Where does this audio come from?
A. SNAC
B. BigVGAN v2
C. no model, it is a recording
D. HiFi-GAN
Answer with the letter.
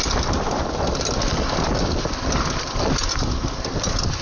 C